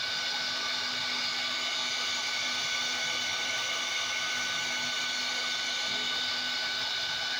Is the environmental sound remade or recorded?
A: recorded